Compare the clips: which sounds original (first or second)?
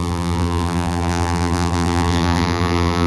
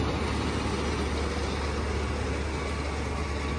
second